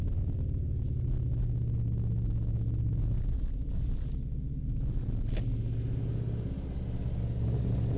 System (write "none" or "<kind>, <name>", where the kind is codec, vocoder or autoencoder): none